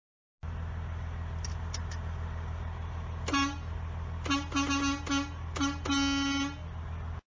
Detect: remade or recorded recorded